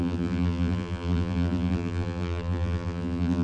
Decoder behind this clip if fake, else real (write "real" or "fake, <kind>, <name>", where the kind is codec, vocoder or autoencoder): fake, vocoder, BigVGAN v2